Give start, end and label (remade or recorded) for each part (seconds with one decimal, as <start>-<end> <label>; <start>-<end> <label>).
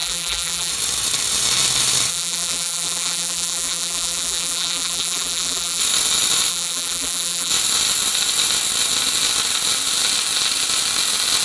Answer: 0.0-0.7 remade; 0.7-2.1 recorded; 2.1-5.8 remade; 5.8-6.5 recorded; 6.5-7.5 remade; 7.5-11.4 recorded